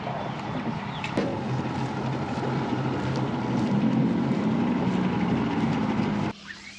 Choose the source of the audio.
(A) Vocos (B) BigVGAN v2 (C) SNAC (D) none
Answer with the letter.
D